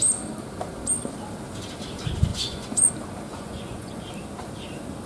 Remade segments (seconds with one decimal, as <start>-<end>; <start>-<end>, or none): 2.3-2.9; 3.3-4.0